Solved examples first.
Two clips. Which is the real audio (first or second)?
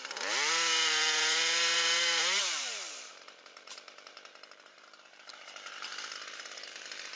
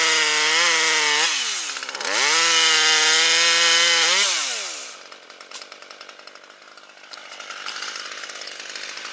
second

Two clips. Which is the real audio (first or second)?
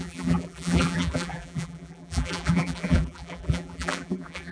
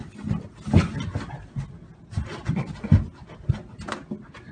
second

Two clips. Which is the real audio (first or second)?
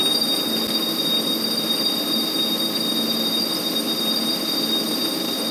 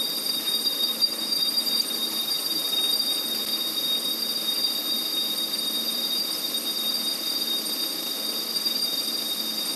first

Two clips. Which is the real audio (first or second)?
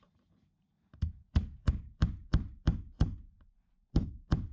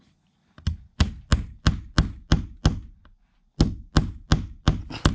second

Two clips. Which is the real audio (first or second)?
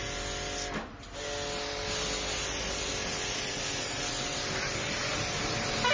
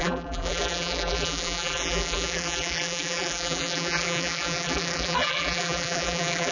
first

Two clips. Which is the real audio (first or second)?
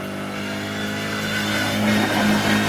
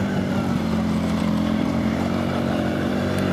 first